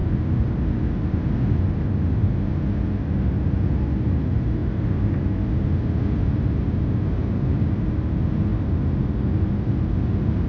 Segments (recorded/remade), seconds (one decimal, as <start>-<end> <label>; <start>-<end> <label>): 0.0-10.5 recorded